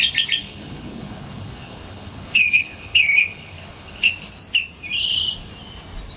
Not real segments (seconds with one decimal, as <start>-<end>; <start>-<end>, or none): 0.4-4.1